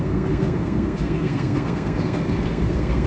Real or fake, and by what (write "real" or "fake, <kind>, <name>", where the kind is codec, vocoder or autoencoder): fake, codec, SNAC